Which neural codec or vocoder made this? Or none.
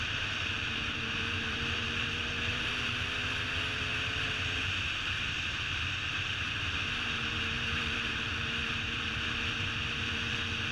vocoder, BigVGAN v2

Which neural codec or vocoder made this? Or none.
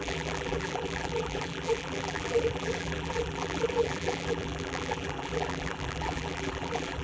vocoder, BigVGAN v2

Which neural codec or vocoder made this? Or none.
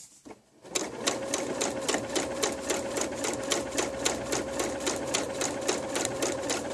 none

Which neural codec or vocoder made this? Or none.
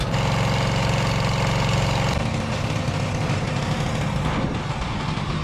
none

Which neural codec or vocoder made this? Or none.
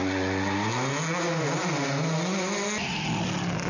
none